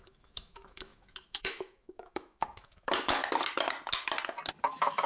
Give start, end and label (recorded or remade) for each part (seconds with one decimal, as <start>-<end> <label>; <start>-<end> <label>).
0.0-3.2 remade; 3.2-4.6 recorded; 4.6-5.1 remade